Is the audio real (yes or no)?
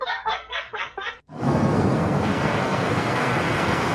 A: no